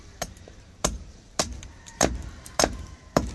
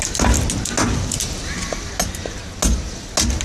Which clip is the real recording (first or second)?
second